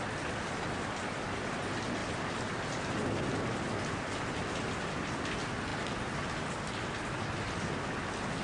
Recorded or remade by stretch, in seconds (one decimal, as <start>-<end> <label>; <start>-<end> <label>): 0.0-8.4 recorded